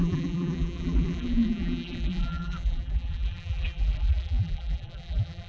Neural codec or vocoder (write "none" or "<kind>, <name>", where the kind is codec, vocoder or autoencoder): vocoder, BigVGAN v2